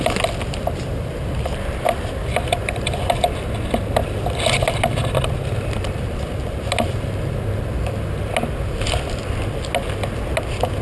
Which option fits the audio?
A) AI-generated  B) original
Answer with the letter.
B